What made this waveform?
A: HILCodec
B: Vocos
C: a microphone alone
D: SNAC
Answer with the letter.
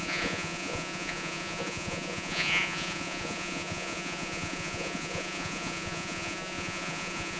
B